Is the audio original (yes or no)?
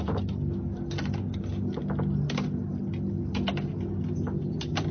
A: yes